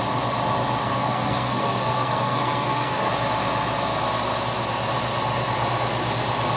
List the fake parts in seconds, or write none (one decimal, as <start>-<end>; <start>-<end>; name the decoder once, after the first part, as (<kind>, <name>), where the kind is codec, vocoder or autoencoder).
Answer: 0.8-3.1 (codec, SNAC)